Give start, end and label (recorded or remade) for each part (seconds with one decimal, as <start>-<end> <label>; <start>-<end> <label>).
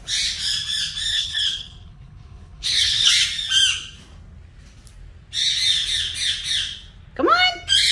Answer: 0.0-1.1 recorded; 1.1-3.1 remade; 3.1-7.9 recorded